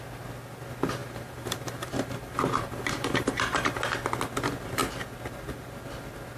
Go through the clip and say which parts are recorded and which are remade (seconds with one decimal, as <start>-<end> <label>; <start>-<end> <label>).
0.0-1.0 recorded; 1.0-3.8 remade; 3.8-6.4 recorded